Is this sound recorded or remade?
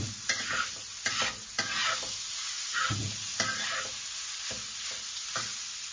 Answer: recorded